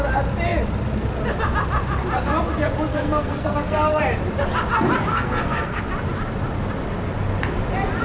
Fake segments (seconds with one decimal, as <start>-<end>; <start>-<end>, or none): 2.9-4.0; 5.1-5.8